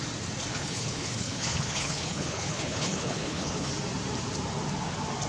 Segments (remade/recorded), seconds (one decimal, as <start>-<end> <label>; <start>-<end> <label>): 0.0-0.5 recorded; 0.5-3.7 remade; 3.7-5.3 recorded